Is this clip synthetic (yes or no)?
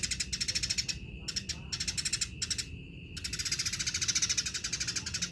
no